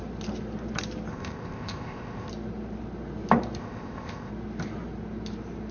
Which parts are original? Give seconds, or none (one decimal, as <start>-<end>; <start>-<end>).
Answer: 0.0-1.1; 2.3-3.6; 4.3-5.7